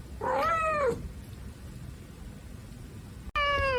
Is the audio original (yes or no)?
yes